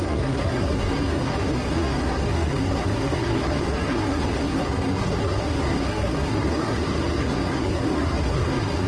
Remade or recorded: remade